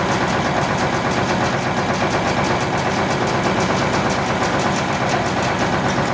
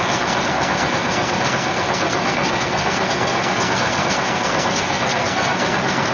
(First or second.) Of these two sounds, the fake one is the second